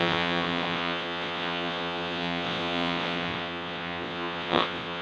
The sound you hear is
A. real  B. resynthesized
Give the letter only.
B